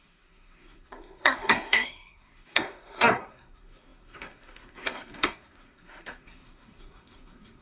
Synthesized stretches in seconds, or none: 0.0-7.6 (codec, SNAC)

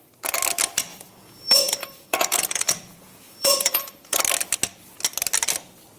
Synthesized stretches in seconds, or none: 0.9-4.2 (vocoder, Vocos)

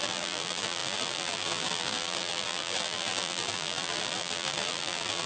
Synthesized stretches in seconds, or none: 0.0-5.3 (vocoder, BigVGAN v2)

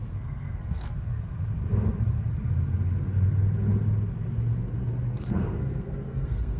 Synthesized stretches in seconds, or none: 0.0-1.1 (codec, SNAC); 5.1-6.6

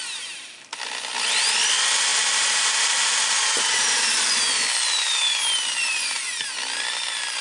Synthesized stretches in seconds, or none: 2.1-4.4 (vocoder, BigVGAN v2); 5.9-6.5

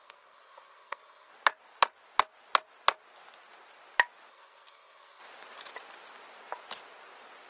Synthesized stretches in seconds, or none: 0.0-1.3 (codec, SNAC); 4.3-5.2

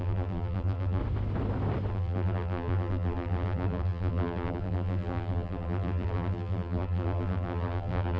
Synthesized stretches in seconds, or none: 0.0-1.0 (vocoder, BigVGAN v2); 1.9-8.2

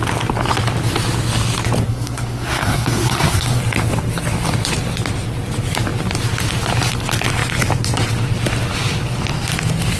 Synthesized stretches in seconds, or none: 1.9-3.6 (codec, SNAC)